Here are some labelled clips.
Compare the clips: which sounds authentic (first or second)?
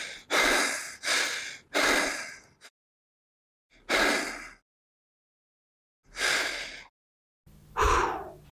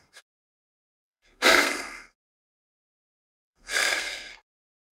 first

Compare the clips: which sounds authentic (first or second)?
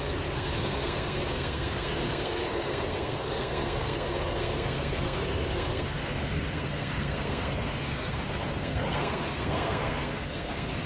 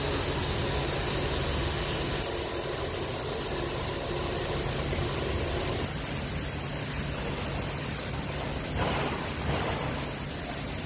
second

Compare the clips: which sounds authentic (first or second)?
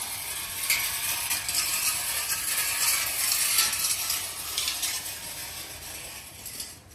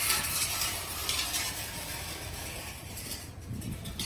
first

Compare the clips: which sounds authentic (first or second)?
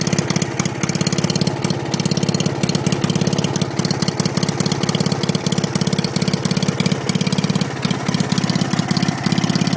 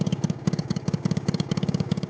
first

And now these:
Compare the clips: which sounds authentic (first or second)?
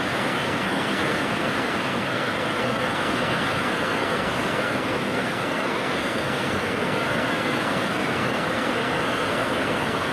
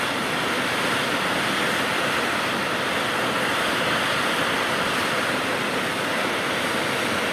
second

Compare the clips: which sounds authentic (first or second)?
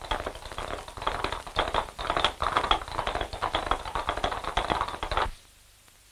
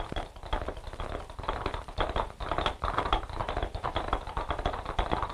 first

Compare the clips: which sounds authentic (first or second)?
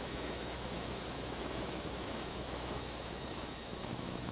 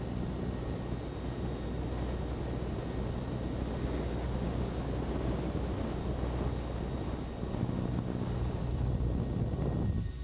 second